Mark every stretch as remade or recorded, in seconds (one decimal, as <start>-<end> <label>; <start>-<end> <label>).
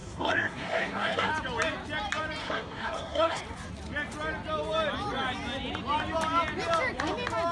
0.0-1.3 remade; 1.3-2.4 recorded; 2.4-3.4 remade; 3.4-7.5 recorded